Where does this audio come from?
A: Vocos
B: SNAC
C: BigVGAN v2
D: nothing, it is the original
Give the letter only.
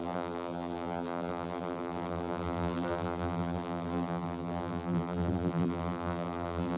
C